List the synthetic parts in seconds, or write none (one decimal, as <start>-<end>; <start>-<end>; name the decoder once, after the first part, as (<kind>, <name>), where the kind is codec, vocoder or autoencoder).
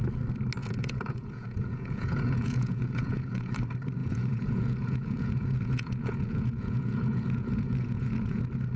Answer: 0.6-3.6 (vocoder, Vocos); 4.0-8.4